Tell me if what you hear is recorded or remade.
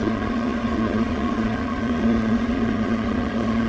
remade